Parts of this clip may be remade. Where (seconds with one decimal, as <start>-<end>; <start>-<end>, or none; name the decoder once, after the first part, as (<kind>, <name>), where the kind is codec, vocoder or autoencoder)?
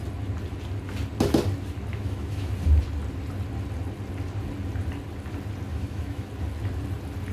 1.9-2.5 (autoencoder, DAC-VAE); 5.7-6.3